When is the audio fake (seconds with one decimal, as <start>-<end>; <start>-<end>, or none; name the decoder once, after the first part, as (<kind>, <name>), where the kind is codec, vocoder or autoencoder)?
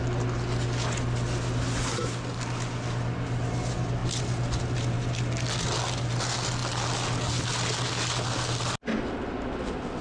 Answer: none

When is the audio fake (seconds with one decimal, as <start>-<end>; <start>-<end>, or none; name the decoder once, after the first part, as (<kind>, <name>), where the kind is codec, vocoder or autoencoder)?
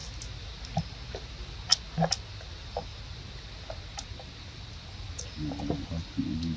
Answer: none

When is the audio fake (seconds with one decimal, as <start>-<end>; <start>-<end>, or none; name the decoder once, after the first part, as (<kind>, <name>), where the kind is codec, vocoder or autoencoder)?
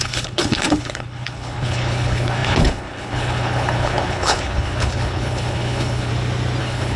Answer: 0.0-6.1 (codec, HILCodec); 6.6-7.0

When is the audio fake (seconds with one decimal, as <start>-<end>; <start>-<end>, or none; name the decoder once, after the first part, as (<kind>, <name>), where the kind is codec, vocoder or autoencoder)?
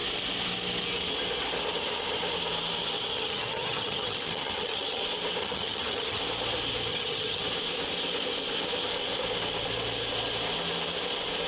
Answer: 3.1-5.0 (vocoder, HiFi-GAN); 5.4-6.2; 6.9-7.4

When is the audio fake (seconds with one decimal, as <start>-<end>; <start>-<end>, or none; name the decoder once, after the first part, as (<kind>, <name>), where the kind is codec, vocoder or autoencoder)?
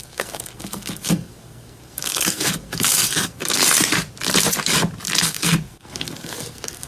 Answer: 0.0-3.6 (codec, SNAC); 5.2-6.9